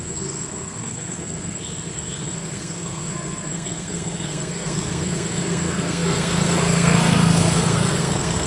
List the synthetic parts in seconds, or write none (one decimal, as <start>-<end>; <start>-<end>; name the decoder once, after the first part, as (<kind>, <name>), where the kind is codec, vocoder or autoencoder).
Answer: 0.0-8.5 (codec, SNAC)